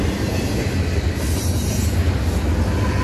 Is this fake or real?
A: real